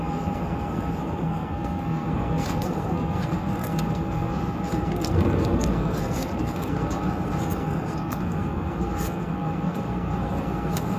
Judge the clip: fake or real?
fake